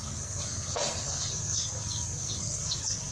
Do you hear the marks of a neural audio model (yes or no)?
yes